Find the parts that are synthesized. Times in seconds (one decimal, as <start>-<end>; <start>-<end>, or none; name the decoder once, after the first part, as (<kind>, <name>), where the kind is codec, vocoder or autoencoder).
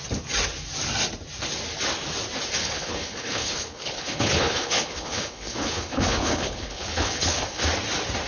2.6-7.6 (codec, HILCodec)